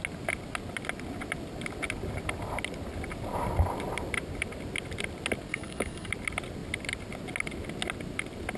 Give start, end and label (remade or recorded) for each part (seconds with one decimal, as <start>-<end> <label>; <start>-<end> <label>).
0.0-5.5 recorded; 5.5-6.1 remade; 6.1-8.6 recorded